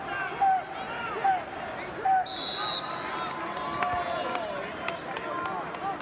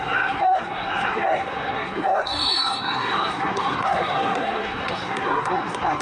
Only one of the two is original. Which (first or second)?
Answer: first